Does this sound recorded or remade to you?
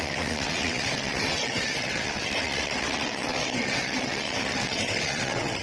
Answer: remade